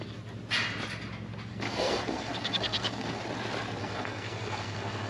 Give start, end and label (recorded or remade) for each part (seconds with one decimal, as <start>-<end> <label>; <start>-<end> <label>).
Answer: 0.0-1.5 recorded; 1.5-3.2 remade; 3.2-3.8 recorded; 3.8-5.1 remade